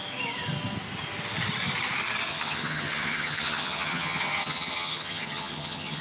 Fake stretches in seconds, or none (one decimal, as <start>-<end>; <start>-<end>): 2.3-6.0